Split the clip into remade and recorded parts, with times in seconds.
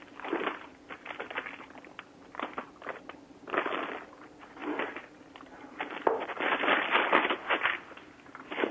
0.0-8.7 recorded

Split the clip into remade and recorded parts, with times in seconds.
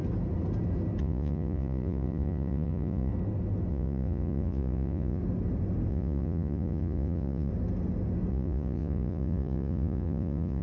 0.0-1.0 recorded; 1.0-3.1 remade; 3.1-3.7 recorded; 3.7-5.2 remade; 5.2-5.9 recorded; 5.9-7.5 remade; 7.5-8.3 recorded; 8.3-10.6 remade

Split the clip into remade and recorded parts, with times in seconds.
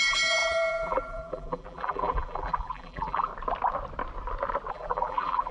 0.0-3.3 remade; 3.3-4.7 recorded; 4.7-5.5 remade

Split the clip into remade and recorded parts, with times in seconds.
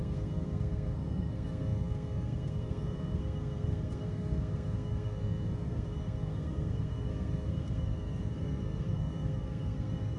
0.0-10.2 remade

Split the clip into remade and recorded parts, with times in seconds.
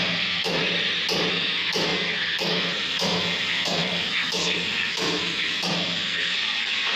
0.0-0.6 remade; 0.6-1.3 recorded; 1.3-7.0 remade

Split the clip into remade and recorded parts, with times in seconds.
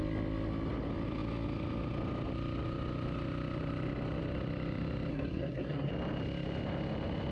0.0-5.1 recorded; 5.1-5.9 remade; 5.9-7.3 recorded